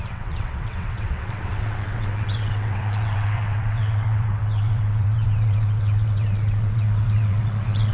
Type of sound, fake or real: fake